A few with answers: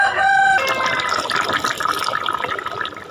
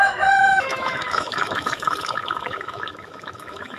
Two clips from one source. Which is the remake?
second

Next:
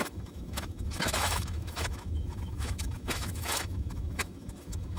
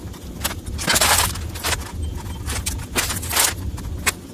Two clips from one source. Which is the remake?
first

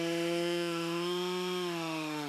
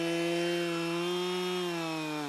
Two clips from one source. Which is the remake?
first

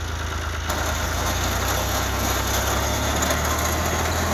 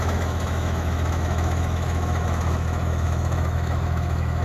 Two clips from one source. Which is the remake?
second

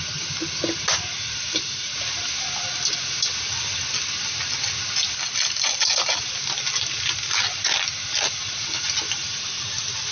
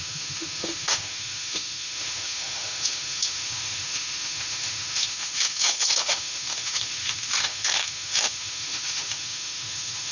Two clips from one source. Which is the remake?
second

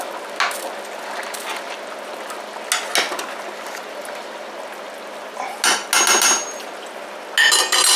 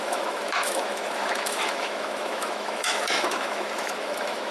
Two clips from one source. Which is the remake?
second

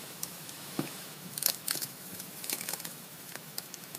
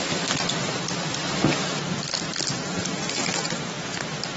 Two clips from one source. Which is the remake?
first